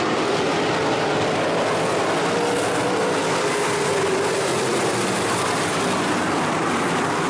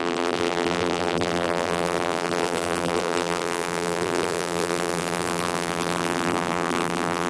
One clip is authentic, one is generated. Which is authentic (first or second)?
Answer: first